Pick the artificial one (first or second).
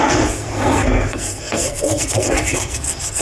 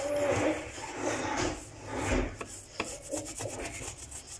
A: first